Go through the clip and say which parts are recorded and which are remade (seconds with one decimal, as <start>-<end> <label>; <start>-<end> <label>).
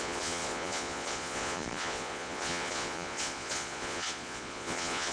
0.0-5.1 remade